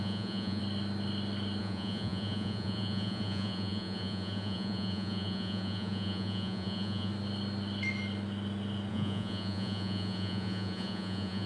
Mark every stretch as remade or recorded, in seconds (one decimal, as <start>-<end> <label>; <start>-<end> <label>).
0.0-0.6 remade; 0.6-1.6 recorded; 1.6-7.1 remade; 7.1-8.9 recorded; 8.9-11.5 remade